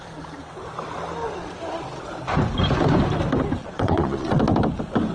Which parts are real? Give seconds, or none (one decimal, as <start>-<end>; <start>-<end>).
0.0-3.6; 4.4-5.1

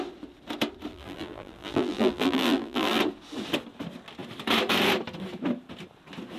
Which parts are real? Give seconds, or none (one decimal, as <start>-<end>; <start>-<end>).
0.0-0.9; 3.0-6.4

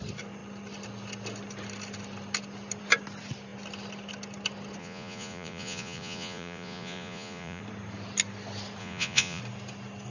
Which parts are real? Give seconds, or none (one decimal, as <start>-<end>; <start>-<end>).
0.0-4.8; 7.6-8.8; 9.4-10.1